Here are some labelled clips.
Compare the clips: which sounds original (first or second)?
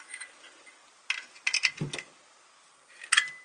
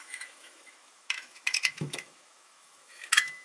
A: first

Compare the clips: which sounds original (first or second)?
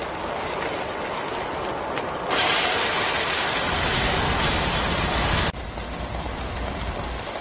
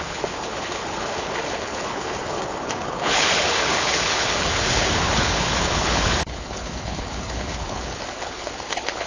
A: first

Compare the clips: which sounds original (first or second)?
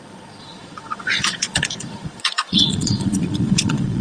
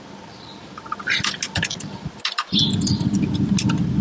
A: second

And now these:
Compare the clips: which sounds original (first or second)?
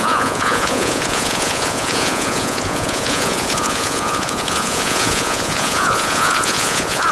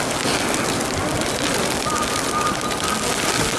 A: second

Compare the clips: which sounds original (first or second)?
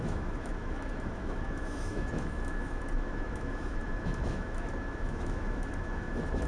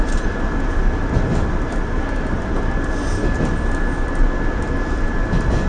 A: second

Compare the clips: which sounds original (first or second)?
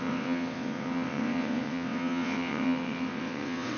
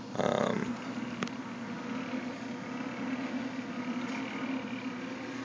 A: second